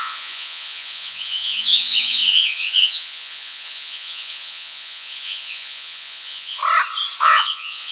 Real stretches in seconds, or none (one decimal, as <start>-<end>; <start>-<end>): 6.6-7.2